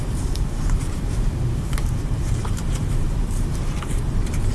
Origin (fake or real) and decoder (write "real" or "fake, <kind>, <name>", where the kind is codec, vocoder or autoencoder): fake, vocoder, BigVGAN v2